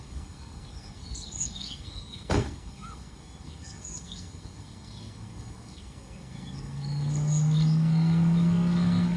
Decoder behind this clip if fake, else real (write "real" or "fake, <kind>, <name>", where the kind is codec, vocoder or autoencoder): fake, codec, SNAC